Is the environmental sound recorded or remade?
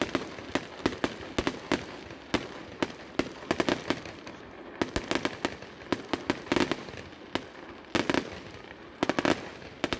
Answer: recorded